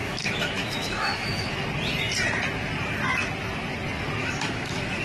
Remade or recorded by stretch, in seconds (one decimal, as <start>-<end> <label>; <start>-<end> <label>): 0.0-1.5 remade; 1.5-4.2 recorded; 4.2-5.0 remade